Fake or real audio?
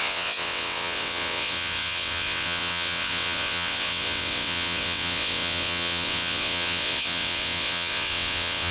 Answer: fake